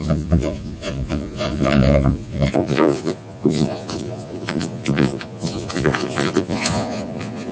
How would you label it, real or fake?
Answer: fake